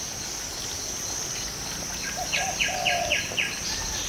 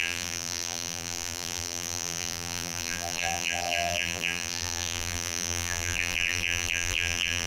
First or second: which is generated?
second